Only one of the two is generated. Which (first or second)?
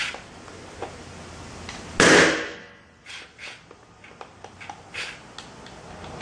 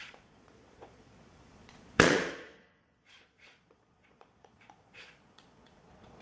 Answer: second